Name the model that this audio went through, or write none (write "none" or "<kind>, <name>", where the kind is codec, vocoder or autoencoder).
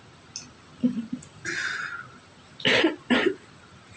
none